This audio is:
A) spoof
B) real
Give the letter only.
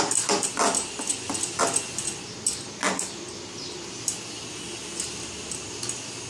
B